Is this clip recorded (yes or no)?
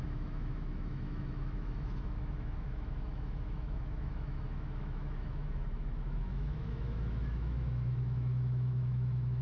no